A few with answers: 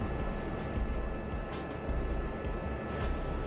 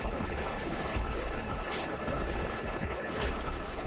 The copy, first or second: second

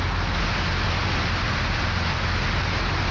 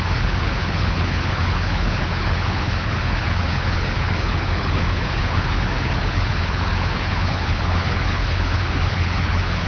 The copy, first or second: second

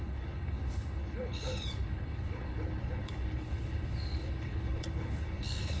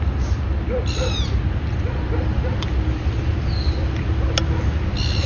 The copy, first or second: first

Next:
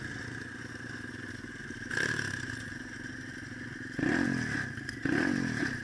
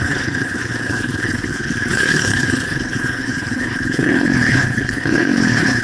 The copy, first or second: second